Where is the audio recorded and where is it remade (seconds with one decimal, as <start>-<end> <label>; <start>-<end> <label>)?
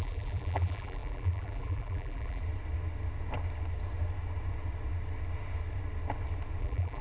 0.0-2.4 remade; 2.4-6.6 recorded; 6.6-7.0 remade